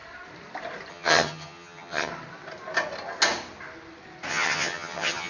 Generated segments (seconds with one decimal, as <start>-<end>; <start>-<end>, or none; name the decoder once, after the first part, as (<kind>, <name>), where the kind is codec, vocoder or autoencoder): 0.9-2.1 (vocoder, HiFi-GAN); 4.3-5.3